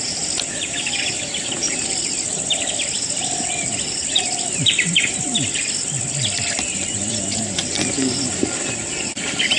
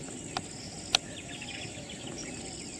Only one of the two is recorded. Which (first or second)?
second